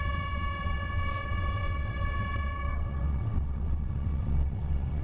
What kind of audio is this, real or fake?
fake